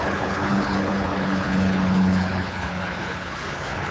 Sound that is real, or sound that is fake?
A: fake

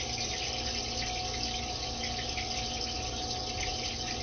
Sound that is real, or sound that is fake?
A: real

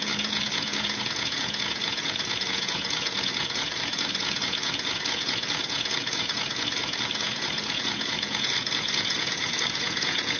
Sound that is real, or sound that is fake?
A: fake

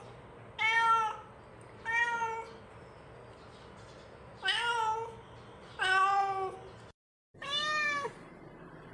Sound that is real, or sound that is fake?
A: real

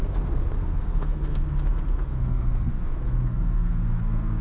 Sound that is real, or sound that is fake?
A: fake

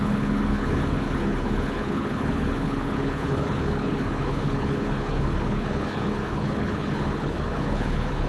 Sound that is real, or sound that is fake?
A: fake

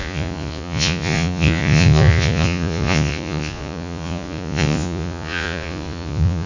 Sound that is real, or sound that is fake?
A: fake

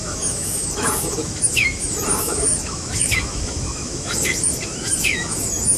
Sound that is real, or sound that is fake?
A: fake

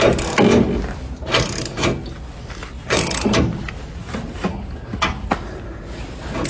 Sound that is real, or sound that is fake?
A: real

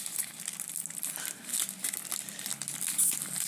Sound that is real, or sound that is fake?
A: real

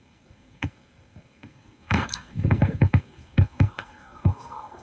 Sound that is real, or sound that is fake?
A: fake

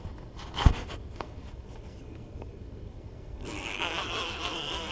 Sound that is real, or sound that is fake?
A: fake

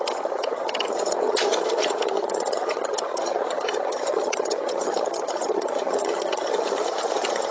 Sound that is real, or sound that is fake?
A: fake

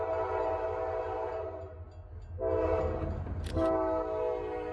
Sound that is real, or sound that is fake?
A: real